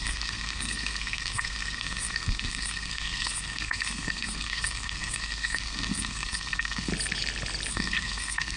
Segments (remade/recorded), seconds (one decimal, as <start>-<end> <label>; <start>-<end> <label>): 0.0-6.9 remade; 6.9-7.7 recorded; 7.7-8.6 remade